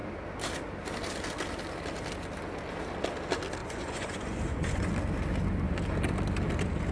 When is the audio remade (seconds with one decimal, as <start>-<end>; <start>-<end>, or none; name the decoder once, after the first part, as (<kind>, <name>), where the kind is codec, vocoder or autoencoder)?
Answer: 3.6-4.9 (vocoder, Vocos)